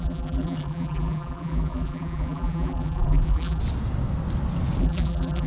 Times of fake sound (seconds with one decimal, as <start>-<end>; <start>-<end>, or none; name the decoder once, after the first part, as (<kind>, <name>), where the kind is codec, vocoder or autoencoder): 0.0-3.6 (vocoder, BigVGAN v2); 4.8-5.5